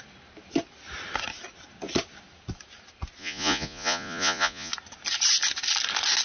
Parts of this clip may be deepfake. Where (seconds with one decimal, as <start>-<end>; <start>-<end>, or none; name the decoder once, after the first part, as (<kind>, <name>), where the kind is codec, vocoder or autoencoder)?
3.2-4.7 (vocoder, Vocos)